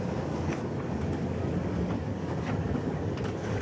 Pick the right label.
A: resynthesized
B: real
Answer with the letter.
A